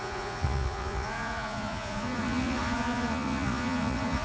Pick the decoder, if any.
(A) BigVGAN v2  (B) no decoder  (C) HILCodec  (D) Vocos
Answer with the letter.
D